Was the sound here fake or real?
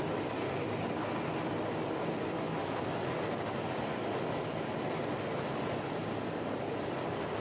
real